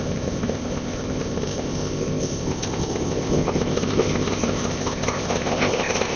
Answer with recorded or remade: remade